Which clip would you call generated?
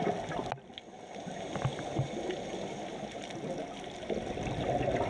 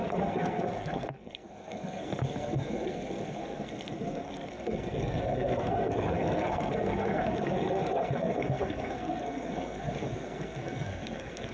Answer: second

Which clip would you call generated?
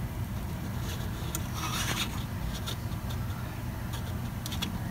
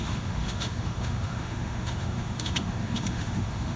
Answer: second